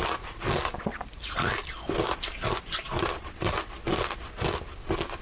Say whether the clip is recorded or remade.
recorded